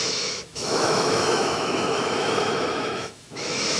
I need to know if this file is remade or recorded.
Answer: remade